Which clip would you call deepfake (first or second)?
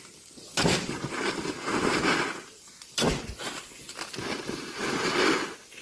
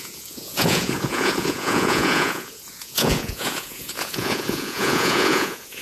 second